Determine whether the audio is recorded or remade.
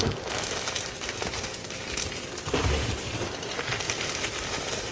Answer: recorded